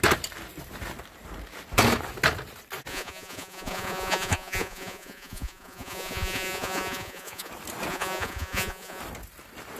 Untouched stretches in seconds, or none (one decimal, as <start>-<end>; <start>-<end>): 0.0-2.9; 7.5-7.9; 9.0-9.8